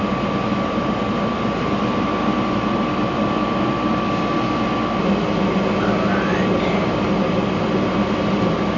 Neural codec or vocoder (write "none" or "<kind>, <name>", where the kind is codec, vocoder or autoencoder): none